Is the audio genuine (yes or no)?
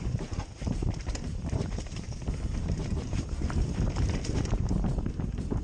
no